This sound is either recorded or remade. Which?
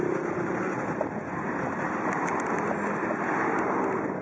recorded